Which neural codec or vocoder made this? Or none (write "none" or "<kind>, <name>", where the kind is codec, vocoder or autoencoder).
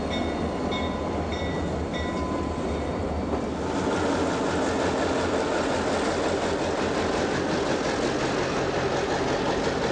none